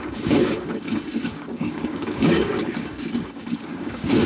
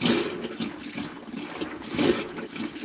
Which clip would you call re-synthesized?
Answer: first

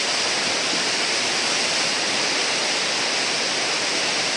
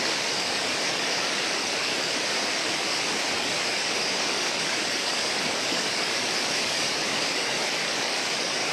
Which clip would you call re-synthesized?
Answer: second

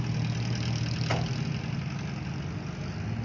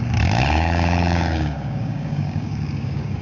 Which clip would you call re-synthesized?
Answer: second